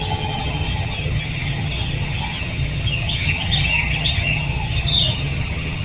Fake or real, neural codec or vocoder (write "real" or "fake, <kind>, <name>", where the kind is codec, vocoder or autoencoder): fake, vocoder, HiFi-GAN